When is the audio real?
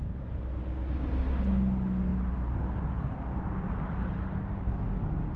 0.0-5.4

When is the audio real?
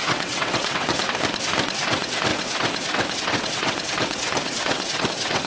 1.0-1.8